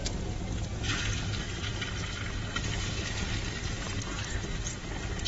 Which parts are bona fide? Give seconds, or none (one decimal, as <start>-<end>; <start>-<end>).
0.0-0.7; 3.9-5.3